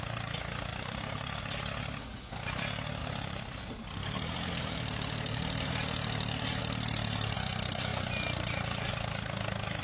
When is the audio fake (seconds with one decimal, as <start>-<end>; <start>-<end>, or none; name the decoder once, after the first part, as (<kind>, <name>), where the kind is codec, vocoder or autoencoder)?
0.7-1.4 (vocoder, BigVGAN v2); 3.0-6.6